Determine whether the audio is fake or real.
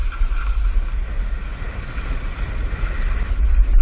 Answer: real